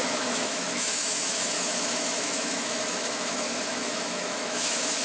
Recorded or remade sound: remade